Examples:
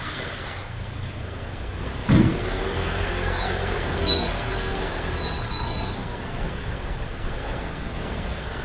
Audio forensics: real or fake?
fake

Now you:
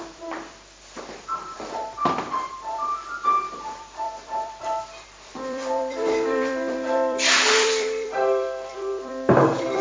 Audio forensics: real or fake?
fake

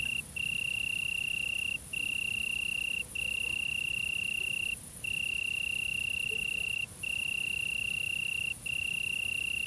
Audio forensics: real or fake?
real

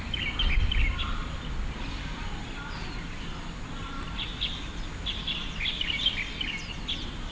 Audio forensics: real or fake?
real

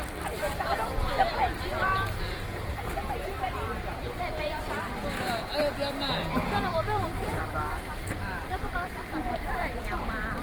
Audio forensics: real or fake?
fake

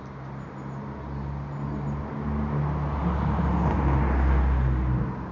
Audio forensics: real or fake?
real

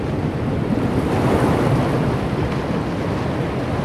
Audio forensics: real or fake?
real